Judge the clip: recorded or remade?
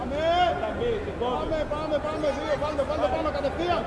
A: recorded